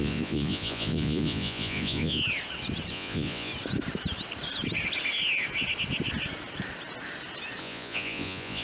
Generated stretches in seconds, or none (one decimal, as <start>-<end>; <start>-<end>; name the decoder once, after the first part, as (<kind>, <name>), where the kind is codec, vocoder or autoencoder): 0.0-2.2 (vocoder, Vocos); 2.9-3.5; 7.6-8.6